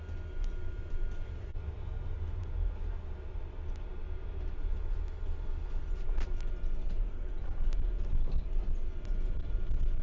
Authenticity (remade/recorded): recorded